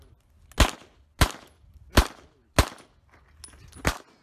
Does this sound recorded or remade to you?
recorded